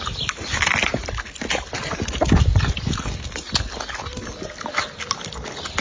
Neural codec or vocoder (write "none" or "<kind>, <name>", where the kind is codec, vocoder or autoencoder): none